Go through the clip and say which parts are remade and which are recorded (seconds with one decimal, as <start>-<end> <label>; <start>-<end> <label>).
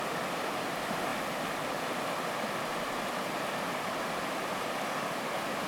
0.0-5.7 recorded